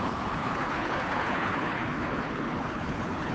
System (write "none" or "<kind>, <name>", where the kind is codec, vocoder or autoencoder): codec, HILCodec